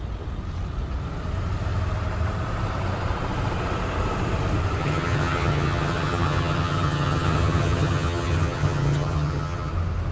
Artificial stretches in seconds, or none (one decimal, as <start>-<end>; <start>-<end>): 4.8-9.7